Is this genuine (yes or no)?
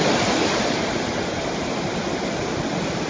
yes